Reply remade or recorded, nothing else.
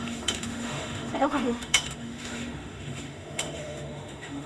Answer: remade